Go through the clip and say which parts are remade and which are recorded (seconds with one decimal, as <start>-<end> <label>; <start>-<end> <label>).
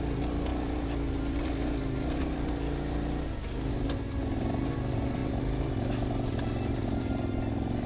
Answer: 0.0-7.9 recorded